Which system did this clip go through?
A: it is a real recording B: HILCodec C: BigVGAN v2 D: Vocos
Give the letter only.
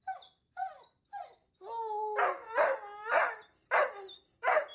A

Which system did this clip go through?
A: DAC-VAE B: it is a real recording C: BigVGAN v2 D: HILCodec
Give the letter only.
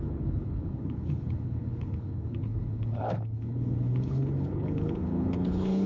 D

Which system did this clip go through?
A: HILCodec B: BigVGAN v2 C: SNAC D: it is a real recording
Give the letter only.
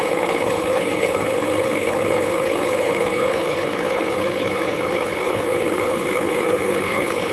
A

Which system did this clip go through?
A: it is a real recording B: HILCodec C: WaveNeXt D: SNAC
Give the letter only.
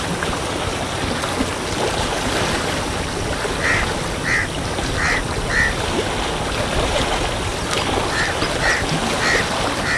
A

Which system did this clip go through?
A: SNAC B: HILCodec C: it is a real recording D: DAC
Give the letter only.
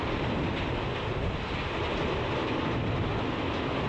C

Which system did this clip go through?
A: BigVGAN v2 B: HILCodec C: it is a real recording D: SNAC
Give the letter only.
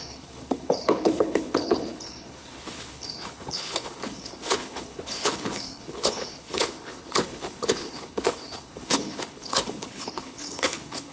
B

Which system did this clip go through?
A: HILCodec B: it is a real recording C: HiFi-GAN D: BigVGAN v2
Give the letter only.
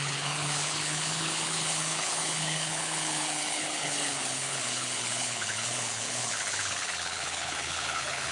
A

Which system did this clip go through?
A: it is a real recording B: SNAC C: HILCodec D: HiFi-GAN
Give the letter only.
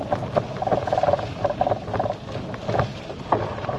A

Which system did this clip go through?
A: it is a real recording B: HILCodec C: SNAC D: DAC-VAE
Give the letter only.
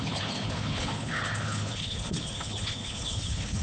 B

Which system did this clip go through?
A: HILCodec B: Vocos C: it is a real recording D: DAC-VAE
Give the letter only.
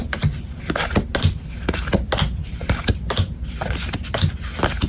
C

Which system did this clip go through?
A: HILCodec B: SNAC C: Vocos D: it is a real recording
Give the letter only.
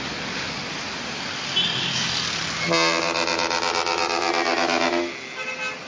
D